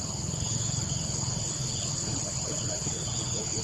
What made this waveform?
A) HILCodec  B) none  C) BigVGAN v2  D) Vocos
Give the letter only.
A